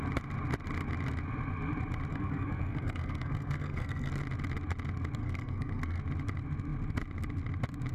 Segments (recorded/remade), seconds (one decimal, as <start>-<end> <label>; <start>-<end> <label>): 0.0-2.1 recorded; 2.1-4.1 remade; 4.1-5.2 recorded; 5.2-6.0 remade; 6.0-7.9 recorded